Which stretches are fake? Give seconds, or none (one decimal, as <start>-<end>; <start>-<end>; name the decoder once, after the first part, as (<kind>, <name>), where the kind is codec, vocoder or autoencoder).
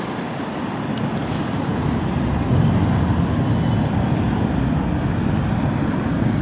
none